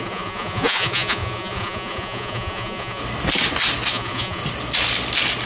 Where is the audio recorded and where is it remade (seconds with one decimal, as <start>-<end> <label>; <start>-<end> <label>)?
0.0-3.0 remade; 3.0-3.9 recorded; 3.9-4.4 remade; 4.4-5.5 recorded